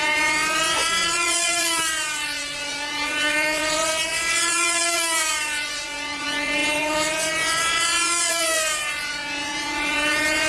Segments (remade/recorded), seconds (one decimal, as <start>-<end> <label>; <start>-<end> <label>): 0.0-10.5 remade